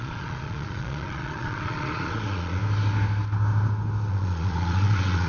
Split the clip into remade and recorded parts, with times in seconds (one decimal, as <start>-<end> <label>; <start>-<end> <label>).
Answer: 0.0-2.6 remade; 2.6-4.1 recorded; 4.1-5.3 remade